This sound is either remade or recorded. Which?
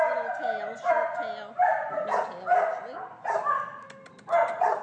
recorded